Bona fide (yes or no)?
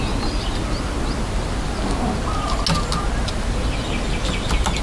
yes